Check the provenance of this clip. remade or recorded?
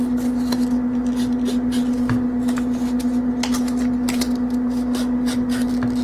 recorded